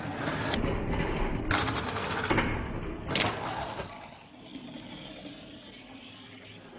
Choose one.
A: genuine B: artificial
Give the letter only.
A